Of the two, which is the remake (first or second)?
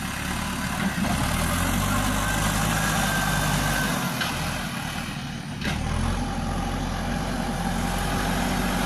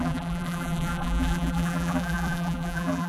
second